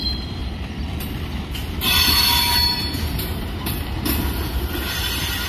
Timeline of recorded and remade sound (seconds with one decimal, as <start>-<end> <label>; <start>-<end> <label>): 0.0-0.4 recorded; 0.4-3.7 remade; 3.7-5.5 recorded